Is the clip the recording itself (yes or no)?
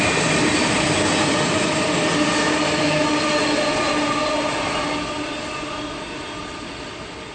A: yes